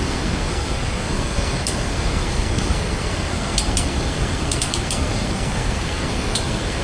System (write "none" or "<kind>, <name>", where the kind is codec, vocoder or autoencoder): codec, SNAC